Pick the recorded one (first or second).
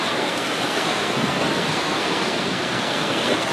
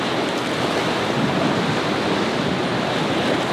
second